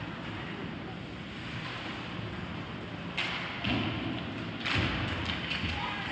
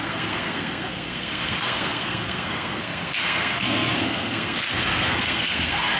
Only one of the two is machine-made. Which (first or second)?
second